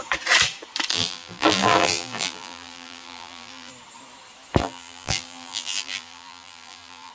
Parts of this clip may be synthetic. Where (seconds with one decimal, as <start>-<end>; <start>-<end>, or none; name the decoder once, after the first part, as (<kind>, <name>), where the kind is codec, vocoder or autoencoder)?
0.9-3.7 (vocoder, BigVGAN v2); 4.6-7.1